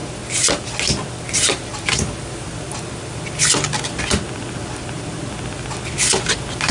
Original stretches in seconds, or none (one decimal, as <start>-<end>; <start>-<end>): 0.0-6.7